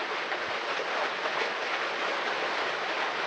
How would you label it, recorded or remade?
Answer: recorded